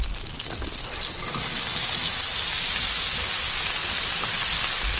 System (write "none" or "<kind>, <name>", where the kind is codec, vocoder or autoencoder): none